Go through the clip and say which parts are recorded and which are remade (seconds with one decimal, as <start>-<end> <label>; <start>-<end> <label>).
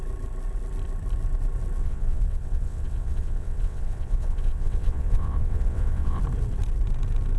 0.0-1.8 recorded; 1.8-6.2 remade; 6.2-7.4 recorded